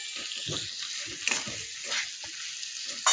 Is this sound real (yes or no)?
yes